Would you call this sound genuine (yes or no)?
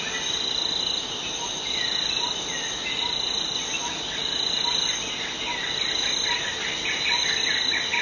yes